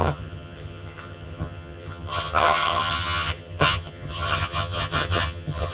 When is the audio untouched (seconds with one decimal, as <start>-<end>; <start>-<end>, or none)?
none